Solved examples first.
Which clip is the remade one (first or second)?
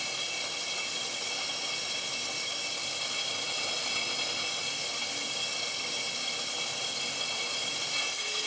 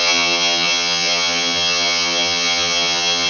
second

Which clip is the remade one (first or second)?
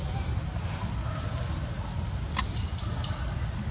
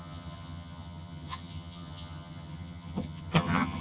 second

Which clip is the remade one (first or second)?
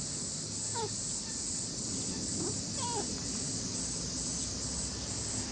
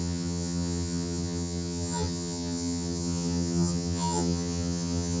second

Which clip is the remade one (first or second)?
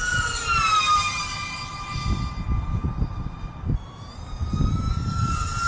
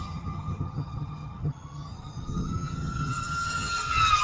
second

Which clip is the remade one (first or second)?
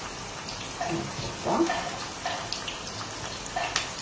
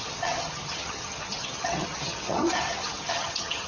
second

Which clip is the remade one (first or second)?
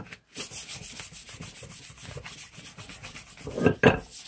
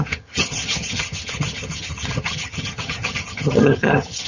second